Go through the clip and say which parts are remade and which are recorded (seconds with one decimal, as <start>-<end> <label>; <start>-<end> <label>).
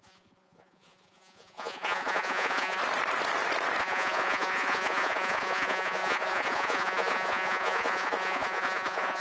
0.0-2.8 remade; 2.8-3.8 recorded; 3.8-9.2 remade